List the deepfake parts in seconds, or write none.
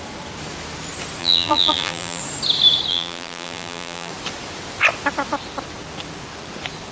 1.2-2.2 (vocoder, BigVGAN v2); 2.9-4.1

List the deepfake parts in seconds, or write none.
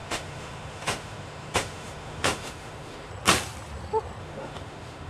0.0-3.1 (autoencoder, DAC-VAE); 4.2-5.1